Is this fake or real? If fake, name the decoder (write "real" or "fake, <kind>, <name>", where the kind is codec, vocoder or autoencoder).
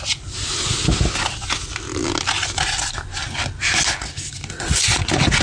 real